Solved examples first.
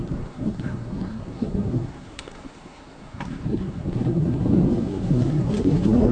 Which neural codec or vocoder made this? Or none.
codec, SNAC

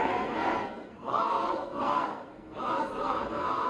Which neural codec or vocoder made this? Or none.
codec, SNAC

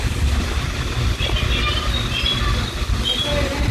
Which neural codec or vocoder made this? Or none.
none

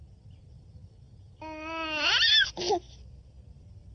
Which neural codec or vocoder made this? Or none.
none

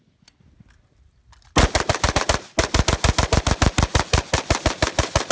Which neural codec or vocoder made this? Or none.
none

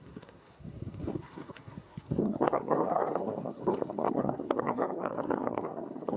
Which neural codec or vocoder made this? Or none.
codec, SNAC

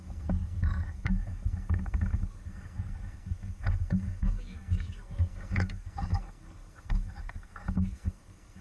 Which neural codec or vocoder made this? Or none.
codec, SNAC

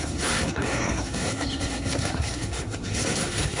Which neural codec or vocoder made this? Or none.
codec, SNAC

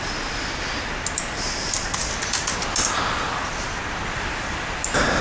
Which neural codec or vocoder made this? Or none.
none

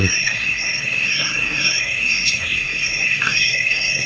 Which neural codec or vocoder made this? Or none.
codec, SNAC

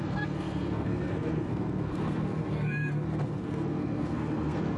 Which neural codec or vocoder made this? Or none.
codec, SNAC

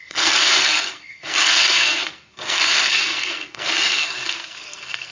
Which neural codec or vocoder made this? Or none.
codec, SNAC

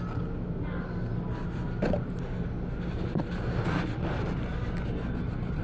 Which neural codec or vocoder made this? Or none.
none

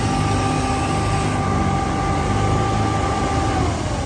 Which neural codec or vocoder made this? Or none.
none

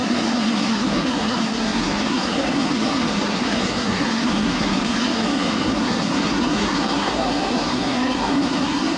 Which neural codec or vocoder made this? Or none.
codec, SNAC